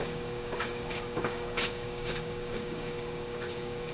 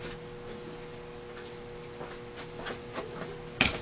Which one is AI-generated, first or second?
first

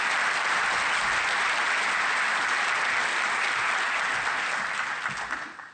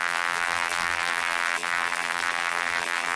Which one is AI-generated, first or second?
second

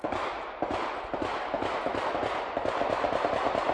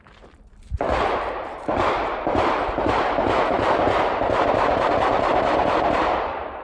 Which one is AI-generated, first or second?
second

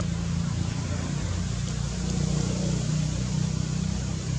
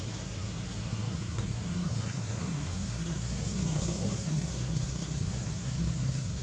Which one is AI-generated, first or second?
second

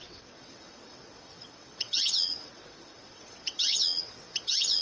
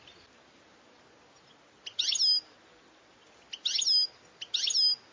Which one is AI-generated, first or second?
first